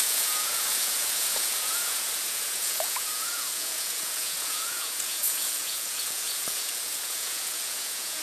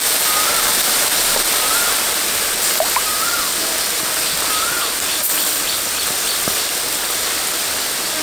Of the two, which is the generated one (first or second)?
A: first